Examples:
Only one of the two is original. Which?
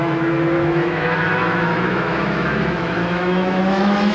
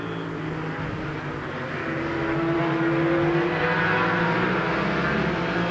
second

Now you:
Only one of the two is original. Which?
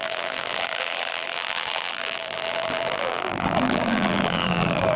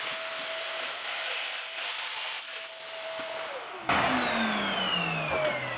second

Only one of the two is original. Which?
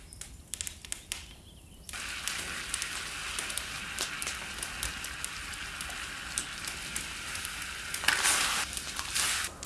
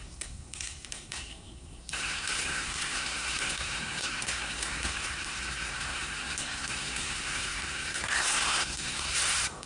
first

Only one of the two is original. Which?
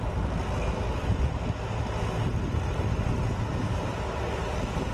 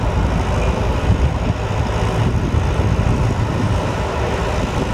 first